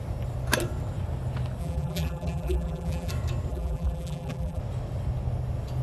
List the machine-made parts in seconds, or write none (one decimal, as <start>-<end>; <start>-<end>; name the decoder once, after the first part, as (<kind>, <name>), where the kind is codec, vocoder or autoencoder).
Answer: 1.6-3.1 (vocoder, BigVGAN v2); 3.5-4.6